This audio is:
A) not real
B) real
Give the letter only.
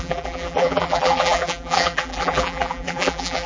A